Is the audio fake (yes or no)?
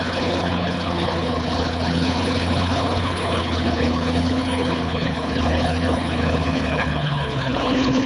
yes